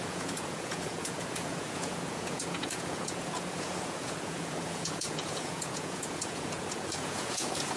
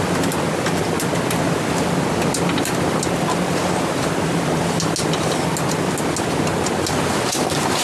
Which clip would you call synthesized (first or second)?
first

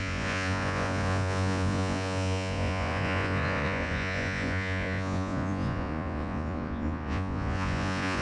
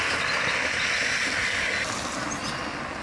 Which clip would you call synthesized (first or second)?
first